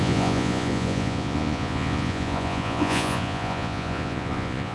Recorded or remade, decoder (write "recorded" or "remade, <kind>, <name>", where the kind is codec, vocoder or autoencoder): remade, vocoder, Vocos